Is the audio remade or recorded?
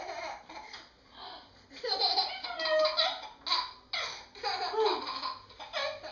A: recorded